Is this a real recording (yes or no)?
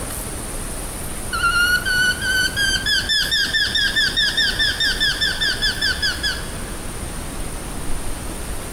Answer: yes